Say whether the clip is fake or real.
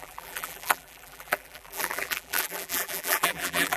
fake